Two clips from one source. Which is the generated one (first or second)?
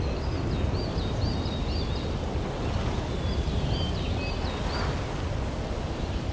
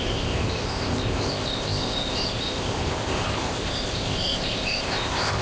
second